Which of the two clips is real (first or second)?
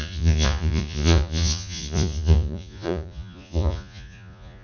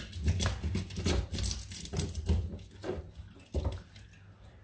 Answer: second